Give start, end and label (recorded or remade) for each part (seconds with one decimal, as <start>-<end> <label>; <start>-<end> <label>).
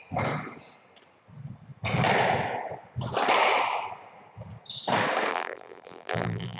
0.0-5.3 recorded; 5.3-6.6 remade